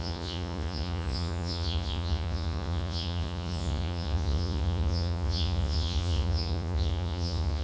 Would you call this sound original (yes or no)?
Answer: no